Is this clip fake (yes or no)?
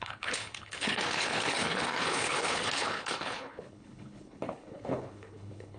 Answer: yes